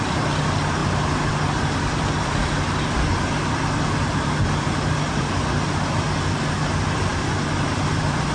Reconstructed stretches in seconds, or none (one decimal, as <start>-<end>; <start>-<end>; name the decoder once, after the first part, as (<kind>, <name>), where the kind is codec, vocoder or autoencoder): none